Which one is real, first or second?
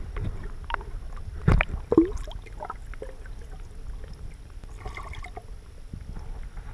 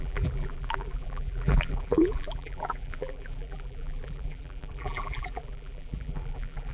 first